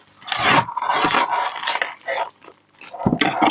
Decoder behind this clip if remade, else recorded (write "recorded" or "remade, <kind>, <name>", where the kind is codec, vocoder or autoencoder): recorded